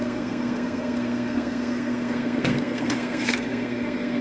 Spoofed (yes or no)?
yes